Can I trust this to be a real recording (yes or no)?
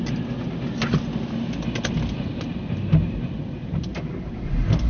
yes